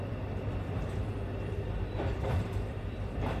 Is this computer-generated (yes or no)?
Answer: yes